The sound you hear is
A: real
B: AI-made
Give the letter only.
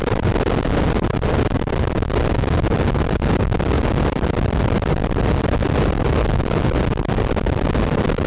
A